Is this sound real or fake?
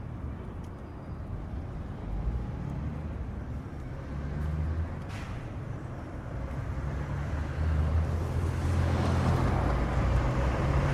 real